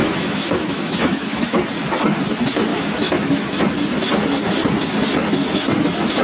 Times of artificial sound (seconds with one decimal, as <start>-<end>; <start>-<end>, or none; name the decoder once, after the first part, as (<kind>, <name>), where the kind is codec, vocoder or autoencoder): 0.0-1.6 (autoencoder, DAC-VAE); 2.7-3.6